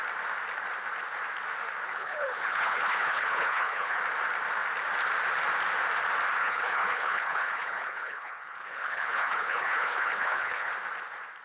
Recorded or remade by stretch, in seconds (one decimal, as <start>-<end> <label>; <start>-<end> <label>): 0.0-1.9 recorded; 1.9-4.0 remade; 4.0-6.4 recorded; 6.4-10.7 remade; 10.7-11.4 recorded